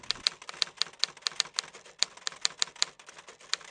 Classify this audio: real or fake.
real